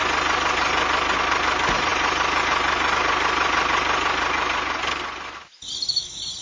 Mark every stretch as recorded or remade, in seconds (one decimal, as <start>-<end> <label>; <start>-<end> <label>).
0.0-6.4 recorded